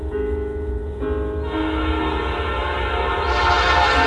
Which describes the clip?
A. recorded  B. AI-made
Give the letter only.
A